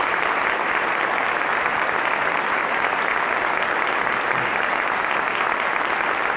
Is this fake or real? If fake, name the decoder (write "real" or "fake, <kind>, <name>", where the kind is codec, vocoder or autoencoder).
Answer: real